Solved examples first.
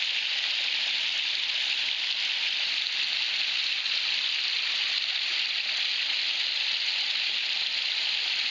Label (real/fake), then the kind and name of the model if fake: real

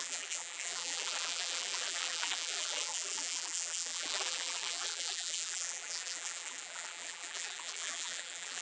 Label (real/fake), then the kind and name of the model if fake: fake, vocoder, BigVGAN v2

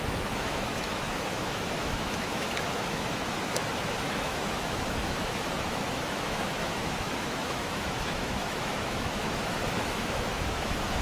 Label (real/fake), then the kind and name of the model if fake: fake, autoencoder, DAC-VAE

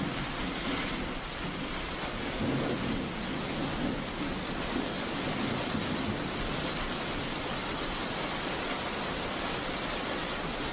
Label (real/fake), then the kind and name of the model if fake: real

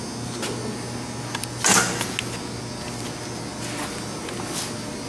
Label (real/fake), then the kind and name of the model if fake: real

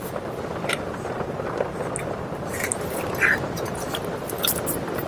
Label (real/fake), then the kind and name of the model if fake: real